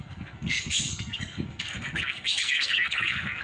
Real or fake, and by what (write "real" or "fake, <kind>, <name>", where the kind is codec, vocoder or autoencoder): fake, codec, SNAC